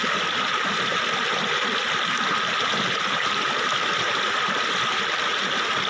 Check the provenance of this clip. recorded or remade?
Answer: recorded